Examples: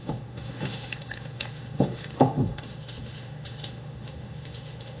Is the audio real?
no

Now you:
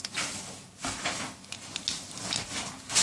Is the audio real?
yes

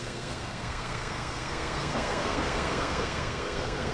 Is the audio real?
no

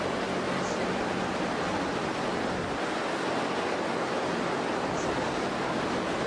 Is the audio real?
yes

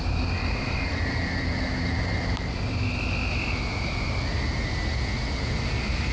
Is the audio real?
yes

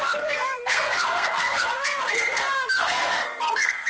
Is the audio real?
no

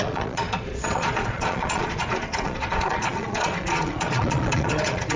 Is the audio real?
no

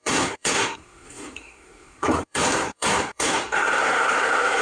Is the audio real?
no